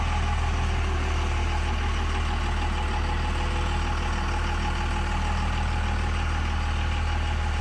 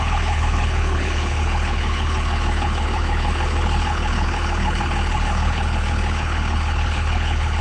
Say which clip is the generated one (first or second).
second